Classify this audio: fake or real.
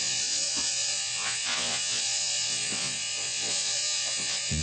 fake